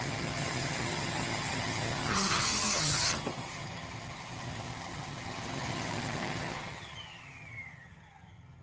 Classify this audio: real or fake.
fake